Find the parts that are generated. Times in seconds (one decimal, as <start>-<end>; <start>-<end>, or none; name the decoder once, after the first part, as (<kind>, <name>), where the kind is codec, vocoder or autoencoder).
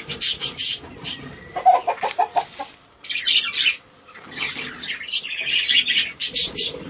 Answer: 0.0-1.8 (vocoder, BigVGAN v2); 5.9-6.9